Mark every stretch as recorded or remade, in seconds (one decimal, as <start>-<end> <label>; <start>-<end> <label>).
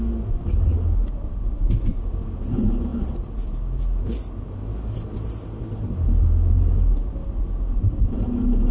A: 0.0-8.7 recorded